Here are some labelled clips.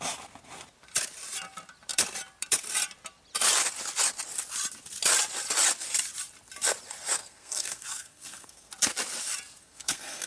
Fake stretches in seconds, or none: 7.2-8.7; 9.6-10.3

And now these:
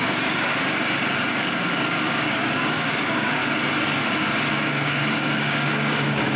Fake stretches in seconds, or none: 0.0-0.6; 1.3-3.4; 4.5-6.4

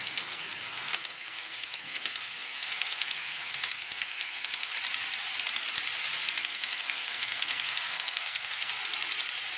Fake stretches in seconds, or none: 0.0-4.7; 6.4-8.7

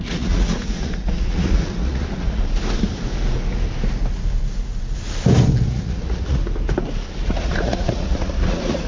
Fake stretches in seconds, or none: 0.0-2.4; 5.7-6.4; 7.3-8.9

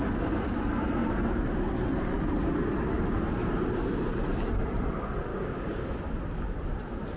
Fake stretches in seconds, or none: 5.3-6.0

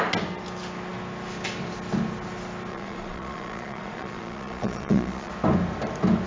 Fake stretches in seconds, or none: 2.7-5.3